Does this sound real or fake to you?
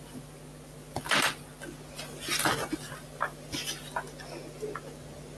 real